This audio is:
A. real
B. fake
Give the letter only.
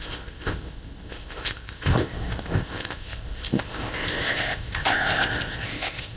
B